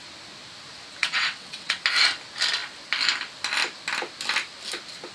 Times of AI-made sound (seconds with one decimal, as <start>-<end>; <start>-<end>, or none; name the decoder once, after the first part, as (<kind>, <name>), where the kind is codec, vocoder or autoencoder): 1.0-1.8 (vocoder, WaveNeXt)